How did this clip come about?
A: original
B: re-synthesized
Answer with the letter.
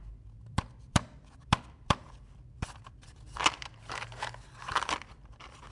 B